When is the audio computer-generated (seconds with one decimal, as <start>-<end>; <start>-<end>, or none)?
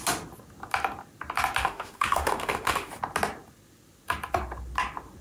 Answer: 1.6-2.9